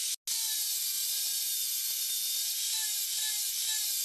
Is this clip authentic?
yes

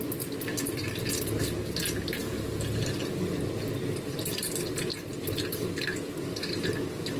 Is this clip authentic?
yes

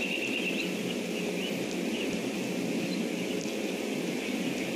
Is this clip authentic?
yes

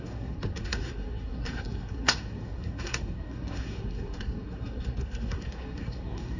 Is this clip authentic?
no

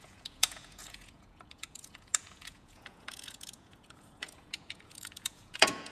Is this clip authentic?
no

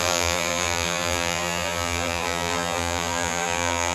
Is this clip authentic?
no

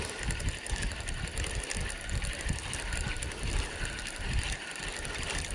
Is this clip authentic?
yes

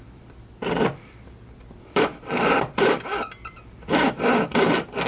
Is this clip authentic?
no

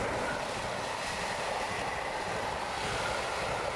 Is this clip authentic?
yes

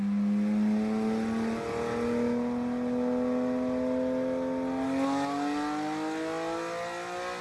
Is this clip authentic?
yes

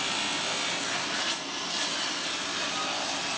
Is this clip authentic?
yes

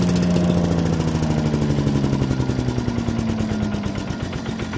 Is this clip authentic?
yes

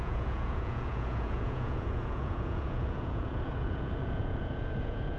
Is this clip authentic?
no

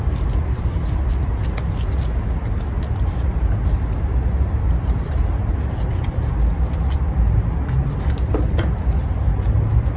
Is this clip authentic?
yes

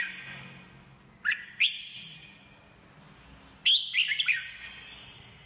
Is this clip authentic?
yes